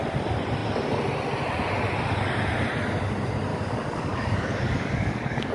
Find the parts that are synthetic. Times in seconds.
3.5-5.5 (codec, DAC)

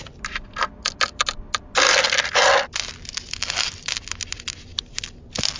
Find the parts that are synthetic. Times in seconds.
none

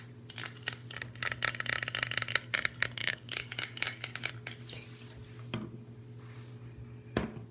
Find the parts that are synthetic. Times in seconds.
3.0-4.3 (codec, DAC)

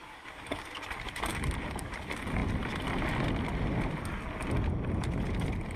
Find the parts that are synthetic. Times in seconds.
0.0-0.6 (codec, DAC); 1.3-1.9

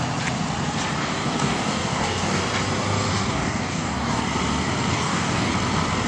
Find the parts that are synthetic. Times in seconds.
1.0-2.4 (codec, DAC); 3.1-4.2; 4.9-5.5

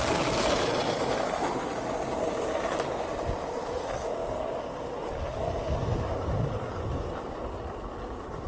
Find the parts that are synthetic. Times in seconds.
none